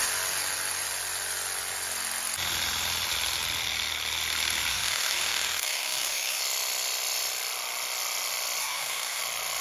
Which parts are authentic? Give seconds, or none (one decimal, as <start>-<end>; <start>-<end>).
0.0-4.7; 6.4-8.6; 9.2-9.6